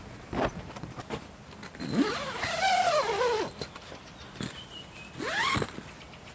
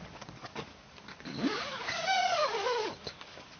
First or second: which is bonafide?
first